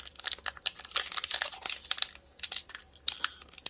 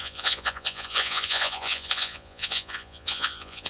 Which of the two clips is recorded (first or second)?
first